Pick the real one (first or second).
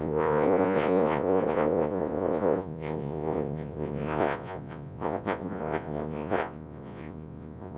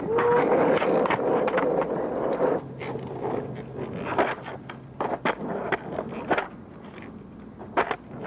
second